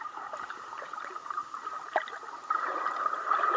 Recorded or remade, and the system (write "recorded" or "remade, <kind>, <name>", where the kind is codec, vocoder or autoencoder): remade, vocoder, BigVGAN v2